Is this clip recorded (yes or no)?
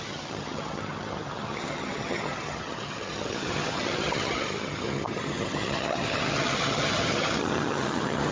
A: no